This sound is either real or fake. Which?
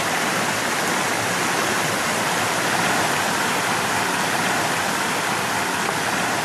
fake